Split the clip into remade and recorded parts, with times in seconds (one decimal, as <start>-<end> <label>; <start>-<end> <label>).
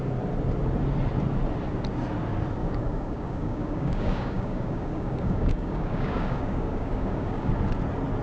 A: 0.0-2.6 recorded; 2.6-7.5 remade; 7.5-8.2 recorded